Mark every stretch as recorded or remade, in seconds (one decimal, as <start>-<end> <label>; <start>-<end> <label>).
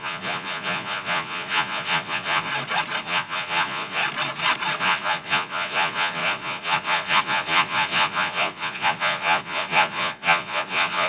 0.0-2.5 remade; 2.5-3.0 recorded; 3.0-4.0 remade; 4.0-4.8 recorded; 4.8-11.1 remade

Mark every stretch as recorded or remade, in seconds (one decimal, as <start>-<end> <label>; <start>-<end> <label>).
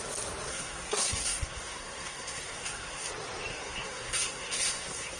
0.0-0.5 recorded; 0.5-3.1 remade; 3.1-3.5 recorded; 3.5-5.2 remade